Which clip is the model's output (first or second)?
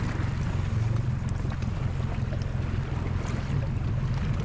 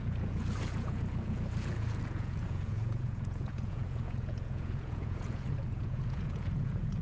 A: second